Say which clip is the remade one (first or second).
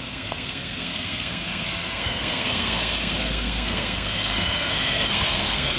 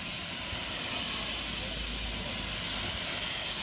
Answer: first